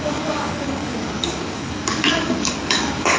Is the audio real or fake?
fake